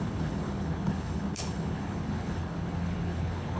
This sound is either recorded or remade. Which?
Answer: remade